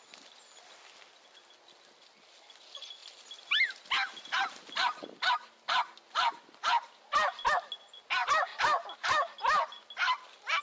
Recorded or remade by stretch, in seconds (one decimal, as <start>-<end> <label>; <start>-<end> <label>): 0.0-10.6 recorded